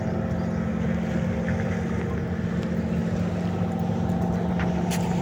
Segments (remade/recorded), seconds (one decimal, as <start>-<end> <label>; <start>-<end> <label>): 0.0-5.2 recorded